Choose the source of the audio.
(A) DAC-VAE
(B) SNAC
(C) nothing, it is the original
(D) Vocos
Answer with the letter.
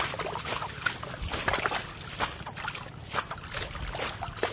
C